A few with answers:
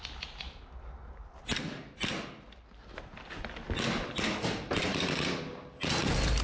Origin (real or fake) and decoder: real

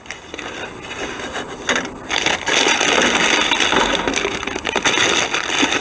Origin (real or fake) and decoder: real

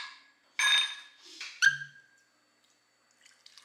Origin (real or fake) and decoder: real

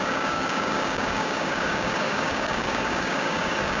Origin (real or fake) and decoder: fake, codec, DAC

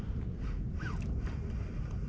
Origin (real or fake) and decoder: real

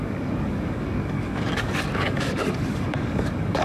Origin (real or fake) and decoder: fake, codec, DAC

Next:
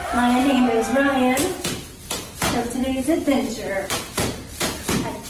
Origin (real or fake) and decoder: real